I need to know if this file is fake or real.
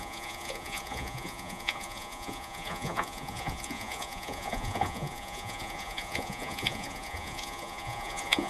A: fake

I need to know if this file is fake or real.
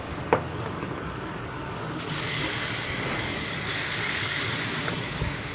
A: fake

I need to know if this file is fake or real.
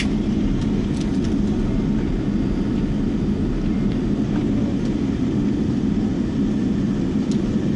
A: real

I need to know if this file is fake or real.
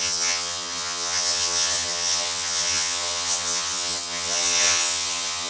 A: fake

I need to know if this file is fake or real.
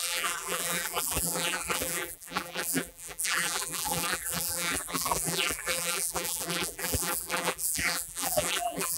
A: fake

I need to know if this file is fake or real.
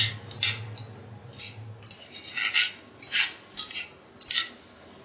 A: real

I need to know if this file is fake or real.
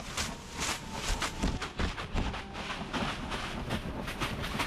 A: real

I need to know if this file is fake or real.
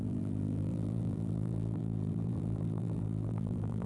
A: fake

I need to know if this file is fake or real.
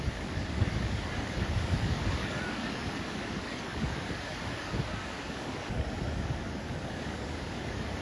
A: fake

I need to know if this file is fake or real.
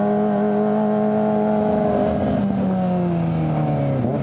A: real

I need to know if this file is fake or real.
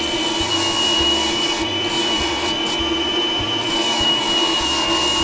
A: fake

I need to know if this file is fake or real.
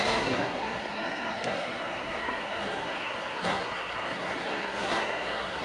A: fake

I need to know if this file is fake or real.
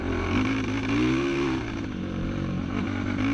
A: fake